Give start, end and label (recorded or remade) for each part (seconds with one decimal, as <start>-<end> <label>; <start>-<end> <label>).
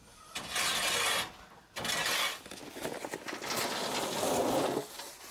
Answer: 0.0-5.3 recorded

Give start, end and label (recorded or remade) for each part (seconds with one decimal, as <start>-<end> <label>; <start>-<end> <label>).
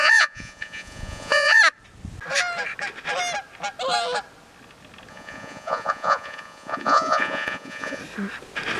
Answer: 0.0-1.6 remade; 1.6-5.1 recorded; 5.1-8.0 remade; 8.0-8.8 recorded